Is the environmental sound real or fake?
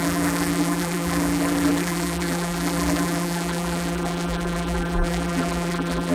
fake